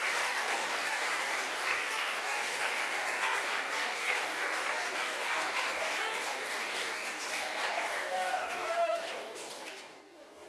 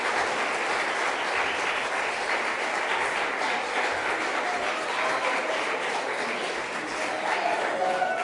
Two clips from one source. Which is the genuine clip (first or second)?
second